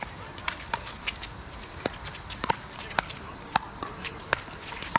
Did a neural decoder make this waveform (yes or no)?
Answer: no